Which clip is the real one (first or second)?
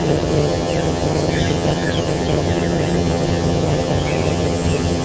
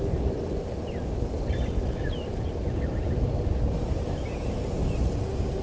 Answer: second